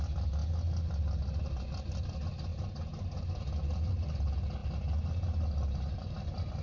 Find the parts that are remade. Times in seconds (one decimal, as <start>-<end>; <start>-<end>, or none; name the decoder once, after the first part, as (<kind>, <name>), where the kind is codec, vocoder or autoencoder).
none